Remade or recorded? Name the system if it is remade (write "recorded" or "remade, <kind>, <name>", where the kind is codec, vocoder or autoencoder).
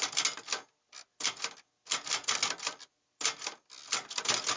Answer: recorded